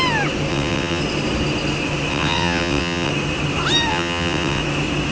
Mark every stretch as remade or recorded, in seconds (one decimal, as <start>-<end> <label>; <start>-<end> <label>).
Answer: 0.0-0.5 recorded; 0.5-1.0 remade; 1.0-2.1 recorded; 2.1-3.1 remade; 3.1-3.9 recorded; 3.9-4.6 remade; 4.6-5.1 recorded